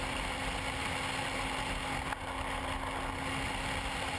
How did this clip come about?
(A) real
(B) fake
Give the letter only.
A